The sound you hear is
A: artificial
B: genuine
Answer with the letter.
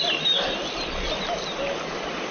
B